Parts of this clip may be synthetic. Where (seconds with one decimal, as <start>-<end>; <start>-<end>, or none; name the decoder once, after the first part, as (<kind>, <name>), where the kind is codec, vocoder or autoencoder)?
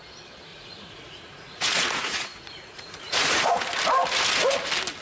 0.5-3.5 (vocoder, Vocos)